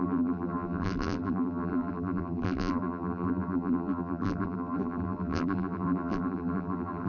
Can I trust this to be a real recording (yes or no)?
no